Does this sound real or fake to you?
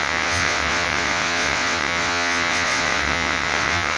fake